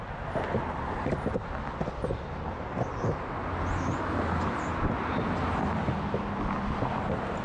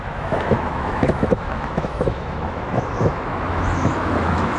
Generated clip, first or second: second